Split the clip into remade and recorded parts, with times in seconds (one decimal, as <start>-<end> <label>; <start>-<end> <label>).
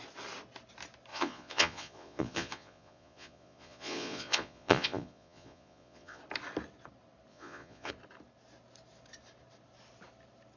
0.0-1.1 recorded; 1.1-6.2 remade; 6.2-7.3 recorded; 7.3-7.9 remade; 7.9-10.6 recorded